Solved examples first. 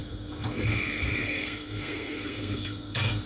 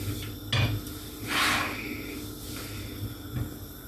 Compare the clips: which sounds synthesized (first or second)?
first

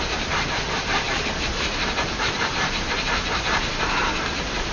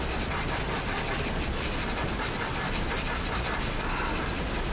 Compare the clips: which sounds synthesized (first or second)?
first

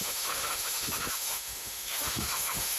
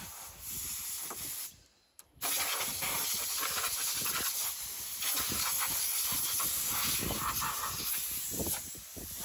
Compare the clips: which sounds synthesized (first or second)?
first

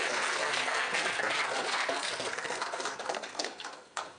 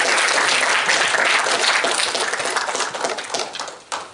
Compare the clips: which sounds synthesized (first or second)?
first